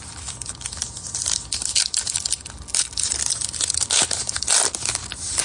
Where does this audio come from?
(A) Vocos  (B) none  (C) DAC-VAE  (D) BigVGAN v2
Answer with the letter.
B